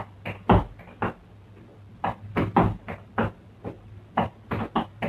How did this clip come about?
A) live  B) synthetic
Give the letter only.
A